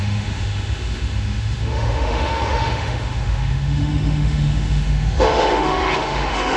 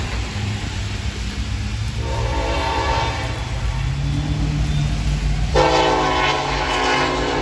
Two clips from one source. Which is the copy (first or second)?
first